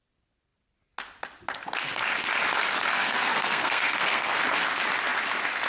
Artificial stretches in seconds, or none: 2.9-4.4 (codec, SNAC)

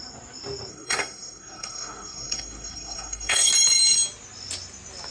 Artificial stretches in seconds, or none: 0.7-3.5 (codec, SNAC)